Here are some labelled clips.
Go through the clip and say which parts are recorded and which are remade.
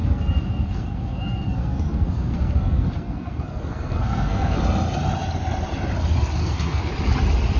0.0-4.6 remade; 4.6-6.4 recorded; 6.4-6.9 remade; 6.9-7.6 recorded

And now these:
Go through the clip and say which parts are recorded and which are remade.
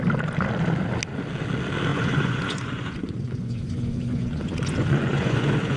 0.0-1.9 recorded; 1.9-5.8 remade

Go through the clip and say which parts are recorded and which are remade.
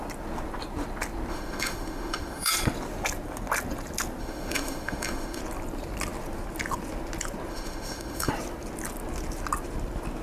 0.0-1.3 recorded; 1.3-2.5 remade; 2.5-4.2 recorded; 4.2-5.4 remade; 5.4-7.5 recorded; 7.5-8.3 remade; 8.3-10.2 recorded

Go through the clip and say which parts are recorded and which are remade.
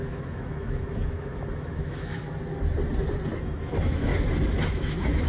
0.0-2.2 remade; 2.2-3.4 recorded; 3.4-4.1 remade; 4.1-4.7 recorded; 4.7-5.3 remade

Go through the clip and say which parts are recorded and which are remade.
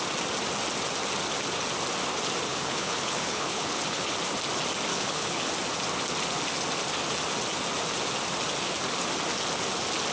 0.0-2.5 recorded; 2.5-4.1 remade; 4.1-4.9 recorded; 4.9-5.5 remade; 5.5-10.1 recorded